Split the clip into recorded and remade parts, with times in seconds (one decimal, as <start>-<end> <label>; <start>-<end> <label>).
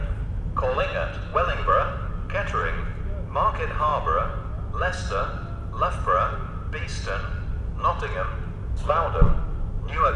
0.0-0.8 remade; 0.8-1.3 recorded; 1.3-2.1 remade; 2.1-10.2 recorded